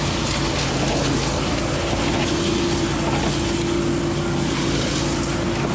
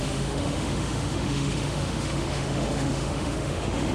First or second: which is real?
first